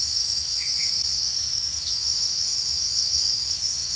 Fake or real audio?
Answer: fake